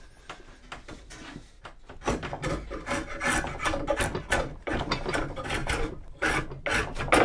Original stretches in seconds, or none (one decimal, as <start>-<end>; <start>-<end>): 0.0-7.2